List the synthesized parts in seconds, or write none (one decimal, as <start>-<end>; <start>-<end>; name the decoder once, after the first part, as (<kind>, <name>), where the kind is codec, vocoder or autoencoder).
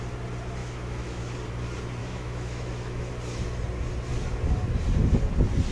0.6-1.2 (autoencoder, DAC-VAE); 2.0-3.1